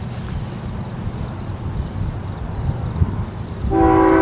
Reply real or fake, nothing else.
real